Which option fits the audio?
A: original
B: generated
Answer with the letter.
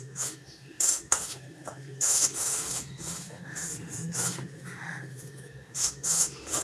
B